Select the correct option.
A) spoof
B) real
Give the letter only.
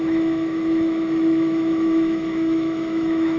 A